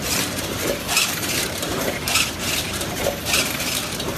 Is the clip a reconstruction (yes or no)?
yes